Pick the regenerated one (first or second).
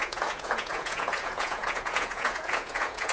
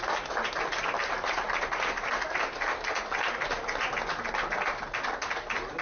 first